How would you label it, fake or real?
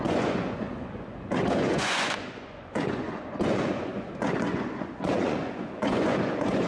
fake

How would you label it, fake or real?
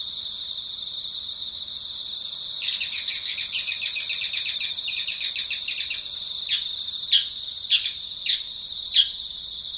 real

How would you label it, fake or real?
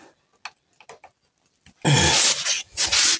real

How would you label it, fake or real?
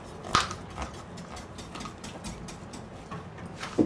real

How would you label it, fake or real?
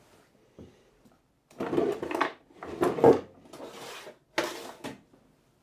real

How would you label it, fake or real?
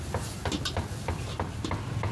real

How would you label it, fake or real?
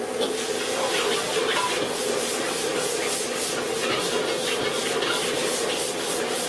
real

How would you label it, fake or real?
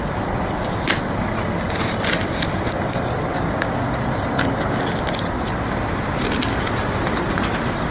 real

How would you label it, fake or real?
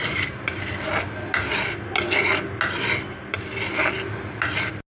real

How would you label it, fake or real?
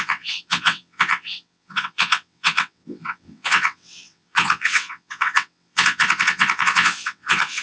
fake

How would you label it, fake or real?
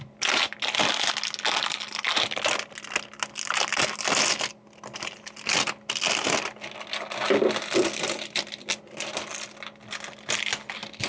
real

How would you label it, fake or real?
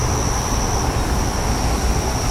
real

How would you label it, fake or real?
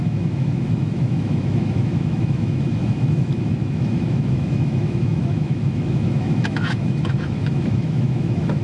fake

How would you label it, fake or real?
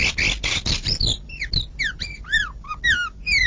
real